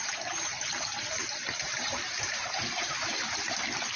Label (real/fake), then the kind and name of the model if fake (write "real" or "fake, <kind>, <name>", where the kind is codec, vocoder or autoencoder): fake, vocoder, BigVGAN v2